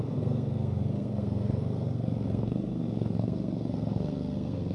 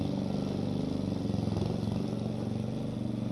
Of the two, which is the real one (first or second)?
second